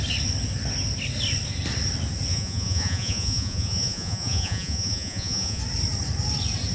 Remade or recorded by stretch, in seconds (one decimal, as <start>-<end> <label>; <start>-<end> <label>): 0.0-2.3 recorded; 2.3-5.6 remade; 5.6-6.7 recorded